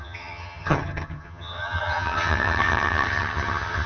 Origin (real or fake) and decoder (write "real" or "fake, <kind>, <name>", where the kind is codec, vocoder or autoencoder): fake, vocoder, HiFi-GAN